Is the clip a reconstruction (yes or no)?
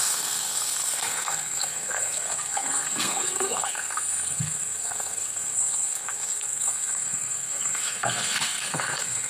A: yes